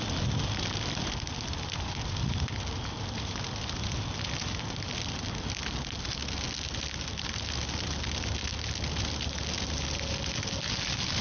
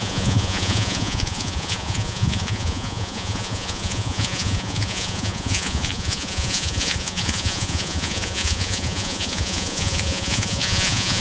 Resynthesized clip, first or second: second